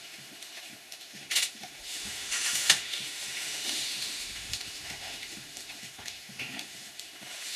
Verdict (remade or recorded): remade